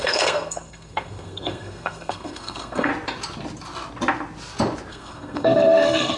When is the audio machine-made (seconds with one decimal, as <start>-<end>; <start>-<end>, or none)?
0.0-2.9; 4.9-6.2